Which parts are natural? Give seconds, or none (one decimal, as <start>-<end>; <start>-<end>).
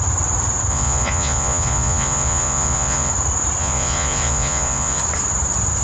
0.0-0.7; 3.1-3.6; 5.0-5.8